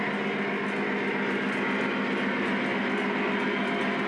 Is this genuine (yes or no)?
yes